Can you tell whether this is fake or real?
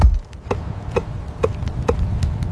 real